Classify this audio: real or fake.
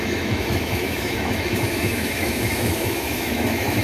fake